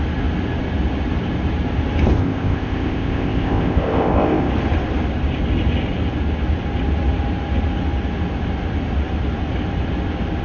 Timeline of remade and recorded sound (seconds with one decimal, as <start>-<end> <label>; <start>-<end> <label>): 0.0-2.2 recorded; 2.2-4.5 remade; 4.5-10.4 recorded